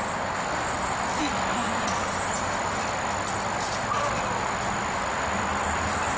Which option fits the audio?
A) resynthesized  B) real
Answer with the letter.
B